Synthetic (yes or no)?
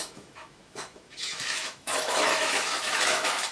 yes